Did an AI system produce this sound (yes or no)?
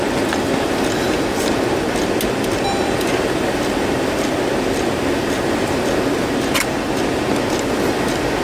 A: no